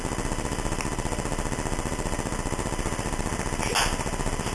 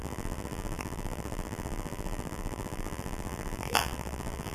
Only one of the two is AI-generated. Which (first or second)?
second